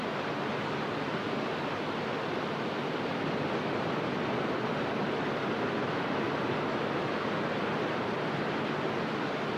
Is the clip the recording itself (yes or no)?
yes